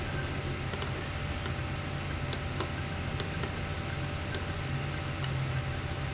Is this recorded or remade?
recorded